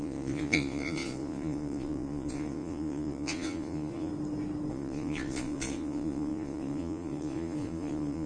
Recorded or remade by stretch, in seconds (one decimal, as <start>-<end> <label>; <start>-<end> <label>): 0.0-4.1 remade; 4.1-4.7 recorded; 4.7-8.3 remade